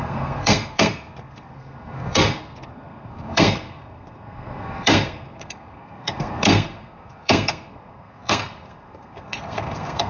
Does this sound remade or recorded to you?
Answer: remade